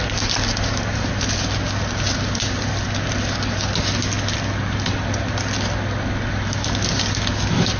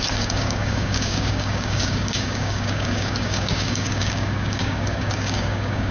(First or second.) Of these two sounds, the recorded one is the first